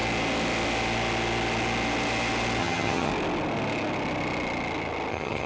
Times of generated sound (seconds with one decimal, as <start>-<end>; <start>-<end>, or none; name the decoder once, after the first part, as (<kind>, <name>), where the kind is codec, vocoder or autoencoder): 2.6-3.1 (vocoder, HiFi-GAN); 5.1-5.5